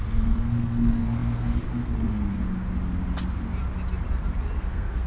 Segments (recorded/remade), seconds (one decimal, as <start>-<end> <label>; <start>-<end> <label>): 0.0-2.3 remade; 2.3-4.6 recorded; 4.6-5.1 remade